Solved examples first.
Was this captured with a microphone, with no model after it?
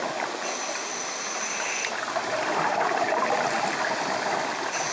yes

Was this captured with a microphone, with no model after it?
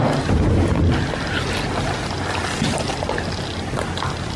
yes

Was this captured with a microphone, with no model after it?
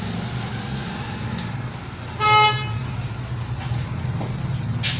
yes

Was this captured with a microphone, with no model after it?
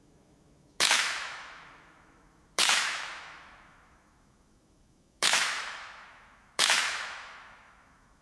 no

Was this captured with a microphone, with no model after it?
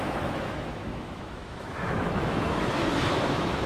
no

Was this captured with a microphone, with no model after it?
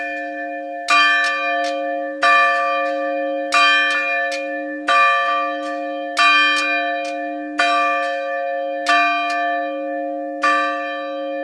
yes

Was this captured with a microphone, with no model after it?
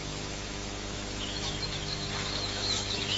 no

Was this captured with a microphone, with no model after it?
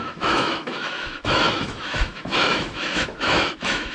no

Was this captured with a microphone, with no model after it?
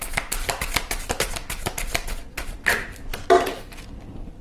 yes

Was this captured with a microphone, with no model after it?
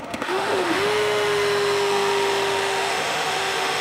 no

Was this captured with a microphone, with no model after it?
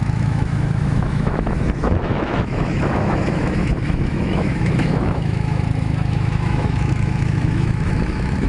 no